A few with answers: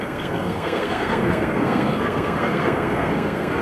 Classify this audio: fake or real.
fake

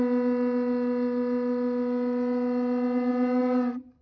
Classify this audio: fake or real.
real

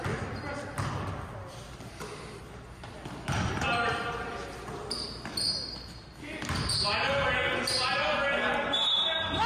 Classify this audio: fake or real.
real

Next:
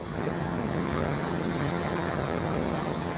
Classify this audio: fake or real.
fake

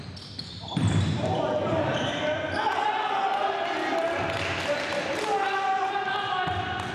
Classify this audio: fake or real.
real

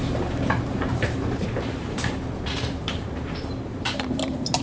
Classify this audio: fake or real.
fake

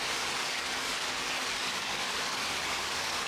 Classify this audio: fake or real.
fake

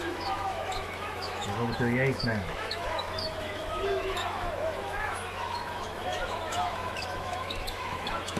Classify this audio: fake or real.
fake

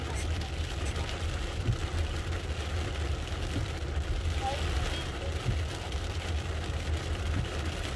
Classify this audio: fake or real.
real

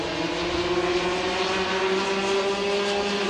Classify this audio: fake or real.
real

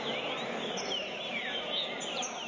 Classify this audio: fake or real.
real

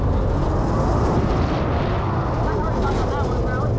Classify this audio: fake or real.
real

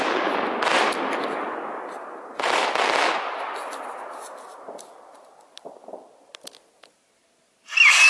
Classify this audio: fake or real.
real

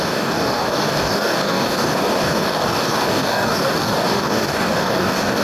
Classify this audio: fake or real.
fake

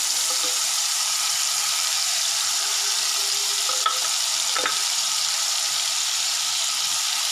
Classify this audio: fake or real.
fake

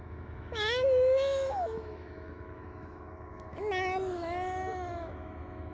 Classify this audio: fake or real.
fake